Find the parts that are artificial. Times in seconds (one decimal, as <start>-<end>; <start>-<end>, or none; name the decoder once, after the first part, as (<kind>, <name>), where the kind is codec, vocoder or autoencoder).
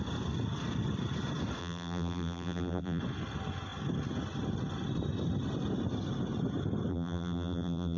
1.6-3.0 (vocoder, BigVGAN v2); 6.9-8.0